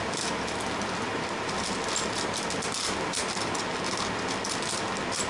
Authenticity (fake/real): real